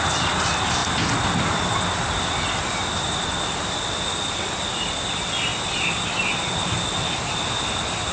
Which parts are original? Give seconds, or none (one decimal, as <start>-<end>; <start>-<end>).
0.0-8.1